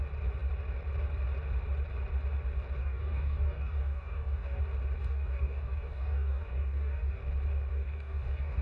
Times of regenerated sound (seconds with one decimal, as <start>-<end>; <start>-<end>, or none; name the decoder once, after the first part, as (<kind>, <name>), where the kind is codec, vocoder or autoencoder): 2.8-4.6 (codec, DAC); 5.0-7.2; 7.7-8.6